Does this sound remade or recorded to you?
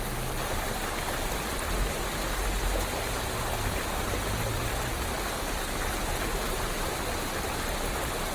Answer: recorded